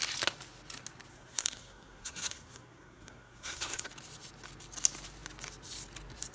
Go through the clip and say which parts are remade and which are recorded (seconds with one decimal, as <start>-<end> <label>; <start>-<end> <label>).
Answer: 0.0-1.1 recorded; 1.1-3.9 remade; 3.9-6.3 recorded